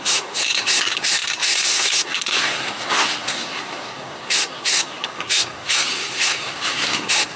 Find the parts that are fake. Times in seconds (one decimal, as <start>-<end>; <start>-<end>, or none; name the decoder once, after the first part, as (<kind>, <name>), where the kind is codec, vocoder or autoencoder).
0.0-7.4 (codec, SNAC)